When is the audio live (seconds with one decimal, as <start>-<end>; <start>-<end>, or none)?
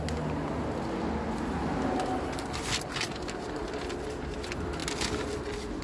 0.0-5.8